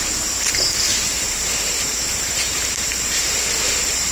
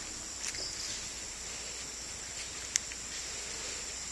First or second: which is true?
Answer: second